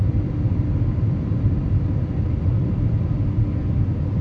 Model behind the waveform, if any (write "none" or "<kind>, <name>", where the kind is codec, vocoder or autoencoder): vocoder, BigVGAN v2